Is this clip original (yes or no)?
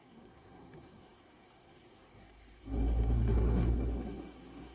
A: no